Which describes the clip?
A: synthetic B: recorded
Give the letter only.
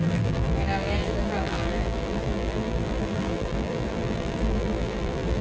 A